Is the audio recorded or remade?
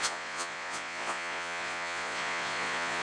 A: remade